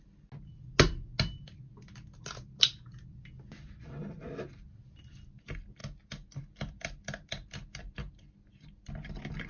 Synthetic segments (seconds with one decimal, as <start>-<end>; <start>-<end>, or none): none